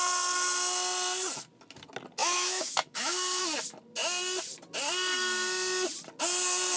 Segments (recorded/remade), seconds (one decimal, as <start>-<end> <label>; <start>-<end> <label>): 0.0-2.2 recorded; 2.2-3.4 remade; 3.4-6.8 recorded